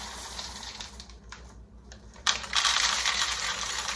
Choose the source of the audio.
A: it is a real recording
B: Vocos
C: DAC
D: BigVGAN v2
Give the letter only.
D